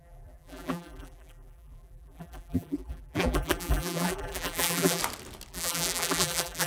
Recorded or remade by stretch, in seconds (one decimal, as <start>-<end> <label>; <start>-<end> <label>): 0.0-5.0 remade; 5.0-5.5 recorded; 5.5-6.7 remade